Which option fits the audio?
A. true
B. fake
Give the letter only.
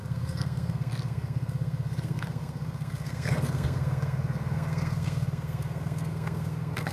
B